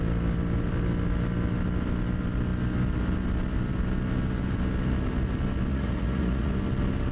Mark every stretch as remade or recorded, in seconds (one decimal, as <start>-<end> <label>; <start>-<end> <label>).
0.0-5.7 recorded; 5.7-6.5 remade; 6.5-7.1 recorded